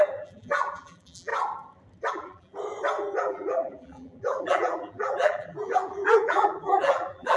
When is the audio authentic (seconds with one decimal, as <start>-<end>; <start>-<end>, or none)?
1.3-2.1; 2.5-3.2

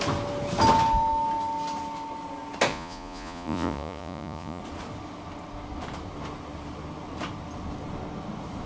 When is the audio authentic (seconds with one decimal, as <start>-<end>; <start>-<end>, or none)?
0.0-2.7; 4.6-8.7

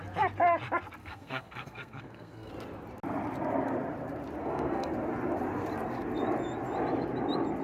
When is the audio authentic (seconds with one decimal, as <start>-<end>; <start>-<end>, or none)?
0.0-1.0; 2.5-4.4; 4.9-7.6

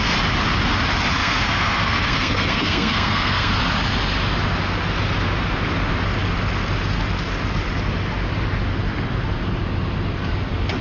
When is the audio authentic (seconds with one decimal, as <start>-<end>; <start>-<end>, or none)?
0.0-1.2; 3.6-10.8

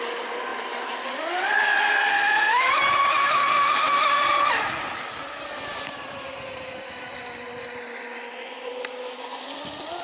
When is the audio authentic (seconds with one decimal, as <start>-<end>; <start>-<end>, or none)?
0.0-2.1; 2.7-3.2; 4.2-10.0

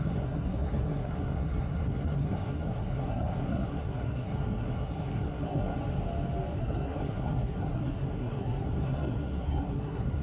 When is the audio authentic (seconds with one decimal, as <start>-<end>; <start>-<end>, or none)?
5.8-6.6

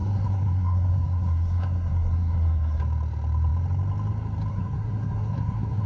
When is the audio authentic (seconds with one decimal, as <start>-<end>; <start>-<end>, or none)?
2.8-4.5

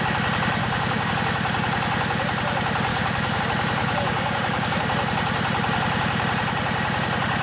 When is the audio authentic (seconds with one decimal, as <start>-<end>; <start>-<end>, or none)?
0.0-0.6; 1.1-2.9; 3.4-3.8; 4.8-7.4